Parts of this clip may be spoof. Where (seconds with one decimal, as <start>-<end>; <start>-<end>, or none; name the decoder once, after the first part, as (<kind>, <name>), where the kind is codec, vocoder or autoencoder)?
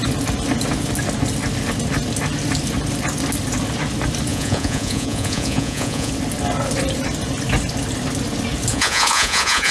4.3-6.1 (vocoder, Vocos); 8.7-9.7